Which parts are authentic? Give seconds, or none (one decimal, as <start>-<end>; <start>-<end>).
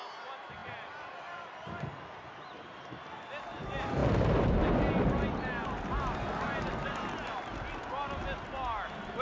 0.0-9.2